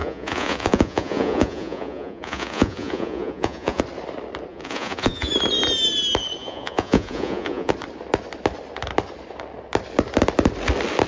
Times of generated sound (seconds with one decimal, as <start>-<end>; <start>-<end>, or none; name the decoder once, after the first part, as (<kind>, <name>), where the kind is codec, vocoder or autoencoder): 0.0-3.8 (vocoder, Vocos); 4.5-5.3; 6.4-7.7